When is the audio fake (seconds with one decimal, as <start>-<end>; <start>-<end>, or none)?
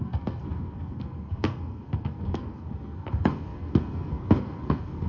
0.0-5.1